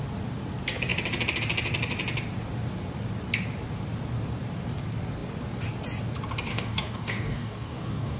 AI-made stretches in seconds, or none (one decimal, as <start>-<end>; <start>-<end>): 6.5-8.2